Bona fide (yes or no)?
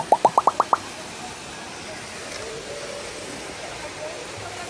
yes